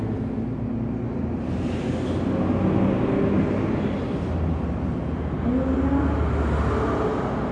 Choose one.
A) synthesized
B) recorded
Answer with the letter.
B